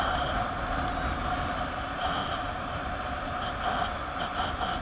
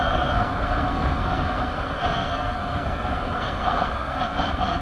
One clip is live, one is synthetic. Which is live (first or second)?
first